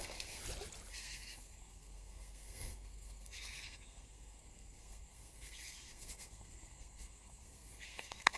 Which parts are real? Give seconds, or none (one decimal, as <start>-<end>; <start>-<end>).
0.4-0.9